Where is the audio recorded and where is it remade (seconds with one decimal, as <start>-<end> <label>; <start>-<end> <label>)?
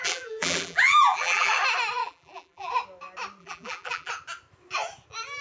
0.0-1.5 remade; 1.5-2.0 recorded; 2.0-2.7 remade; 2.7-3.4 recorded; 3.4-4.1 remade; 4.1-5.4 recorded